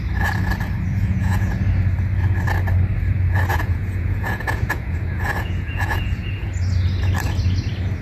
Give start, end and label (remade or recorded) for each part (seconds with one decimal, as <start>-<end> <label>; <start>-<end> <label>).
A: 0.0-0.9 recorded; 0.9-1.6 remade; 1.6-3.5 recorded; 3.5-6.5 remade; 6.5-8.0 recorded